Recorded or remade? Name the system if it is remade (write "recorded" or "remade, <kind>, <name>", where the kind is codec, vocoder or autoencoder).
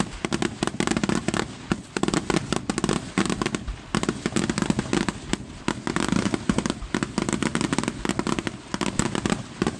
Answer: recorded